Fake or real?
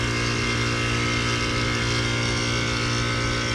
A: real